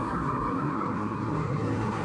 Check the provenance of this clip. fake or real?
fake